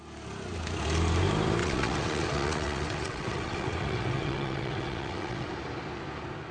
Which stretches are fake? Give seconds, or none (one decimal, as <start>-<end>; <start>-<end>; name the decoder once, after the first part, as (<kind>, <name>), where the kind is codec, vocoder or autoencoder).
1.6-5.5 (vocoder, WaveNeXt)

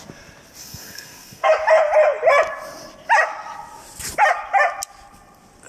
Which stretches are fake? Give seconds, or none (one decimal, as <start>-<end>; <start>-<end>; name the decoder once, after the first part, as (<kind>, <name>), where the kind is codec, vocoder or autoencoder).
0.6-1.5 (codec, SNAC)

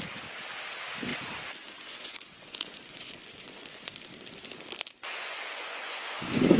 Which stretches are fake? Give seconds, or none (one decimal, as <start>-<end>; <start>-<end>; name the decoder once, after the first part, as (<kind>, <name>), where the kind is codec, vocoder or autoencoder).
1.1-3.9 (vocoder, Vocos); 5.0-6.6

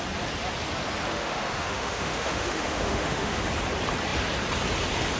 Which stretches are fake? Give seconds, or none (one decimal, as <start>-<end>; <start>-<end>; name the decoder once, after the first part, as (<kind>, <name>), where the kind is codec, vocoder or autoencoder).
1.1-3.4 (autoencoder, DAC-VAE)

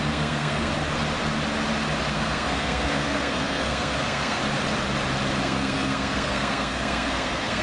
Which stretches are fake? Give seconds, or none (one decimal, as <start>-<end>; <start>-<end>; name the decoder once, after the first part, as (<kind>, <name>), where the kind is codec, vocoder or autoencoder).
0.0-0.7 (codec, SNAC); 2.1-4.4; 5.4-7.6

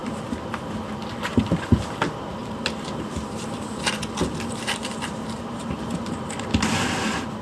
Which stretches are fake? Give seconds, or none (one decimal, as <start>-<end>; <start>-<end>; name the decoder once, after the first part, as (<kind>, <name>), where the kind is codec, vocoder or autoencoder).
0.0-1.0 (vocoder, BigVGAN v2); 2.4-3.1; 4.8-6.3

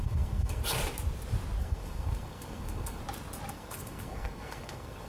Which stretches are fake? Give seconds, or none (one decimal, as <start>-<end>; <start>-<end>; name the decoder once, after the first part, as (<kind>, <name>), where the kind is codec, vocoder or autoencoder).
0.0-0.6 (codec, SNAC); 1.6-3.0; 3.5-5.1